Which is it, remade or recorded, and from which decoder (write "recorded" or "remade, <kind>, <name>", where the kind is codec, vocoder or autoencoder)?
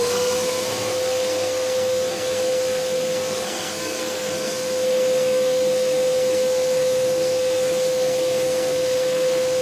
remade, codec, SNAC